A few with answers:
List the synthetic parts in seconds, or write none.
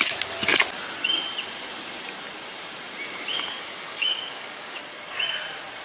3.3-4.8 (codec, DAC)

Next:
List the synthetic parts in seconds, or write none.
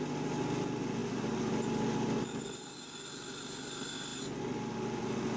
none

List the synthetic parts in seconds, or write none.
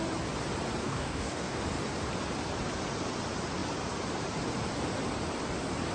0.8-1.6 (codec, DAC)